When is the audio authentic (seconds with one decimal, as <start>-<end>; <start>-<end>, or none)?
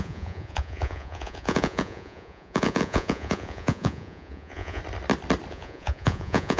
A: 4.8-5.5